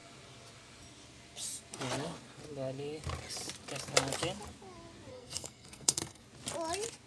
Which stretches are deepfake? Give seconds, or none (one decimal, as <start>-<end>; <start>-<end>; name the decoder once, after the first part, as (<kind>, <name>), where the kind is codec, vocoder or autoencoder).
5.1-6.2 (codec, SNAC)